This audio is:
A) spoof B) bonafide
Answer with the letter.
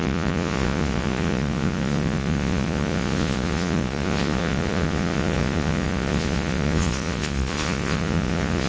A